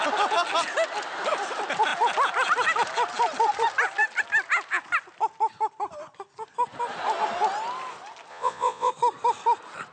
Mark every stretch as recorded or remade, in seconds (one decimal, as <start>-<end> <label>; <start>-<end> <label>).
0.0-8.3 recorded; 8.3-8.9 remade; 8.9-9.9 recorded

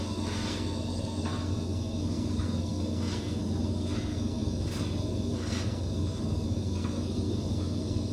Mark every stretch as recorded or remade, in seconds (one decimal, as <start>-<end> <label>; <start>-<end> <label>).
0.0-8.1 remade

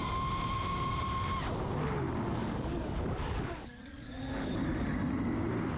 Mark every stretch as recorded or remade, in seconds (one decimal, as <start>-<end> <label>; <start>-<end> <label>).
0.0-2.4 recorded; 2.4-4.1 remade; 4.1-5.8 recorded

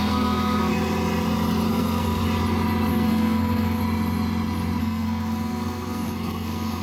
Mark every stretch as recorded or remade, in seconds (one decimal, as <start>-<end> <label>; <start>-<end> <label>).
0.0-0.7 remade; 0.7-1.7 recorded; 1.7-2.2 remade; 2.2-2.9 recorded; 2.9-3.8 remade; 3.8-4.8 recorded; 4.8-6.8 remade

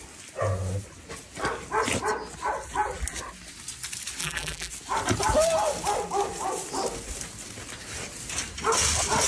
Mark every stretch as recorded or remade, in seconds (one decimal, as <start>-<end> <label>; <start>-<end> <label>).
0.0-4.2 recorded; 4.2-4.7 remade; 4.7-9.3 recorded

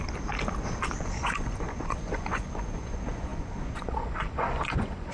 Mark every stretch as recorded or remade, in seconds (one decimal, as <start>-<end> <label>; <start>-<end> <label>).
0.0-1.0 recorded; 1.0-5.1 remade